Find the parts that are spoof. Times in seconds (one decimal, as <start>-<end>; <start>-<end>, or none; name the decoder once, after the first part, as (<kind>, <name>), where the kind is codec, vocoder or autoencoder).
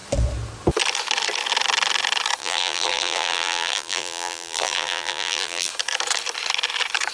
2.4-5.7 (vocoder, BigVGAN v2)